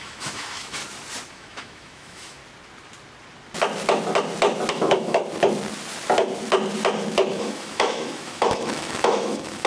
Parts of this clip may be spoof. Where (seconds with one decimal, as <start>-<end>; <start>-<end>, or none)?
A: 0.0-0.8; 1.3-2.4; 4.7-5.2; 7.3-9.7